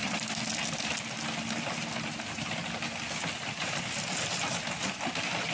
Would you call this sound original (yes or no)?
yes